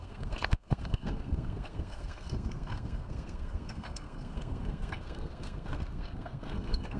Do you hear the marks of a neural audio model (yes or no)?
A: yes